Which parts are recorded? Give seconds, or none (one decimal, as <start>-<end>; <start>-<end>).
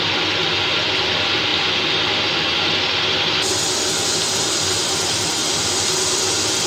0.0-6.7